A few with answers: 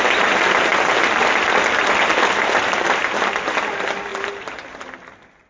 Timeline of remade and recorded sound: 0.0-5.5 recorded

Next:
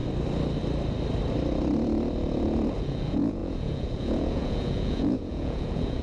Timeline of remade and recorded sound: 0.0-2.8 recorded; 2.8-6.0 remade

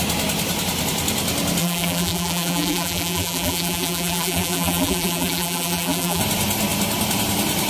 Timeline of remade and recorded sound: 0.0-1.6 recorded; 1.6-6.2 remade; 6.2-7.7 recorded

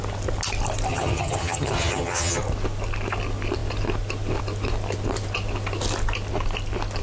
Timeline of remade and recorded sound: 0.0-0.9 recorded; 0.9-2.4 remade; 2.4-7.0 recorded

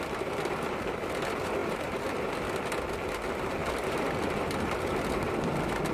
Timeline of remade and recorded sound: 0.0-5.9 recorded

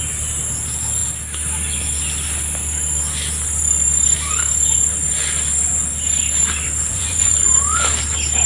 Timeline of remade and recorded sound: 0.0-6.9 recorded; 6.9-7.5 remade; 7.5-8.5 recorded